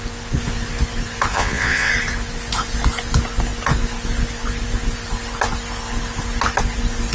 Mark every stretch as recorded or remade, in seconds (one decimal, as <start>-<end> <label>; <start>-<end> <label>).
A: 0.0-1.3 recorded; 1.3-1.9 remade; 1.9-7.1 recorded